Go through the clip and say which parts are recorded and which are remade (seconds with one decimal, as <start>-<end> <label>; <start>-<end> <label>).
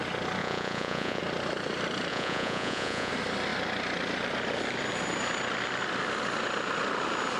0.0-0.4 recorded; 0.4-1.2 remade; 1.2-2.1 recorded; 2.1-3.1 remade; 3.1-7.4 recorded